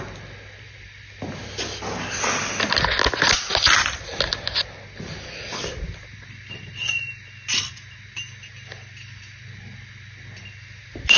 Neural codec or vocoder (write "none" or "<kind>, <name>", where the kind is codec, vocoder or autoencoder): none